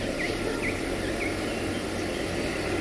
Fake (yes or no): no